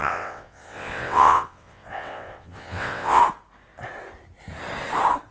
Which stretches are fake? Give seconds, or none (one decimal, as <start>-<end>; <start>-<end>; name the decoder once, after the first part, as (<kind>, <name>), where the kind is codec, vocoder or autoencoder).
0.0-3.2 (vocoder, WaveNeXt)